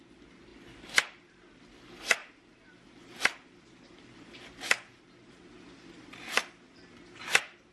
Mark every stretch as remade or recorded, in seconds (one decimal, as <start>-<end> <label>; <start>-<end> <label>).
0.0-7.7 recorded